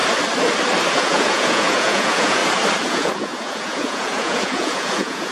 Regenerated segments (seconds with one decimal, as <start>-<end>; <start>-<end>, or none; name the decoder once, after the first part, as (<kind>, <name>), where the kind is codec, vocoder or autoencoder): 0.9-2.4 (vocoder, Vocos); 2.9-5.3